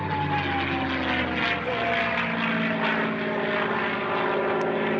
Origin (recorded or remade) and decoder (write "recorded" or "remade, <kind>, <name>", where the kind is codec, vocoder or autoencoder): recorded